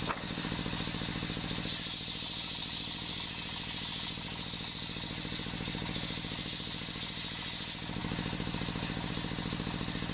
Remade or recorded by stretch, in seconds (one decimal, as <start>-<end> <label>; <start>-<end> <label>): 0.0-10.1 recorded